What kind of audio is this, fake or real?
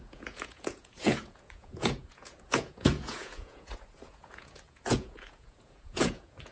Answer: fake